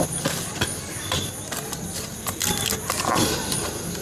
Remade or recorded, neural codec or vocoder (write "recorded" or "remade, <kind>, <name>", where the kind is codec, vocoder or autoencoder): recorded